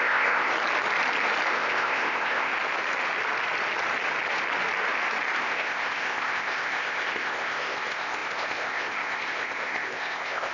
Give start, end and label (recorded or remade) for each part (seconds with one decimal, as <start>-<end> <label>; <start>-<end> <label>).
0.0-0.5 remade; 0.5-1.5 recorded; 1.5-2.5 remade; 2.5-5.4 recorded; 5.4-10.5 remade